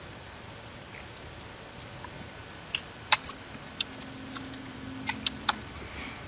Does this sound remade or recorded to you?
recorded